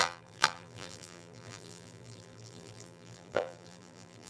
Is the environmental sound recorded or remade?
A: remade